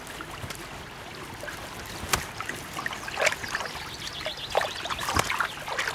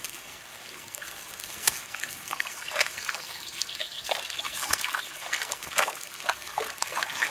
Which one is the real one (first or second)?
first